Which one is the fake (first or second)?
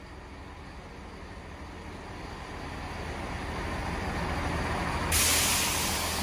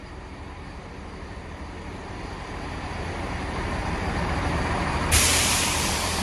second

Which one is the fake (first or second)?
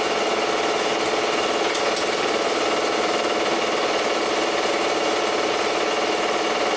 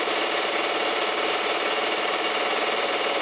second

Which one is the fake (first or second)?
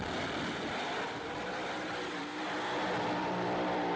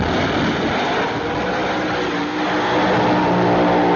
first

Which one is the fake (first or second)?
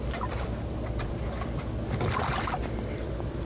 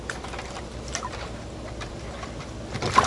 second